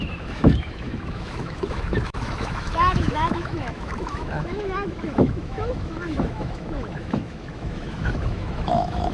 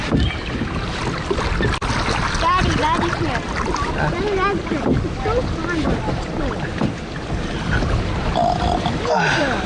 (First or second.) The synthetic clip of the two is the first